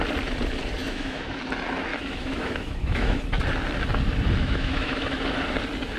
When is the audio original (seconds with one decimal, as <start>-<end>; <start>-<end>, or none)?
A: 0.0-0.8; 1.4-1.9; 3.2-4.4; 5.2-6.0